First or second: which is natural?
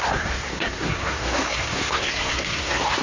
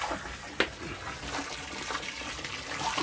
second